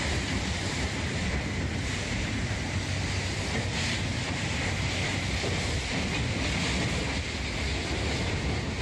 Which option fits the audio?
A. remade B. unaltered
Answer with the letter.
B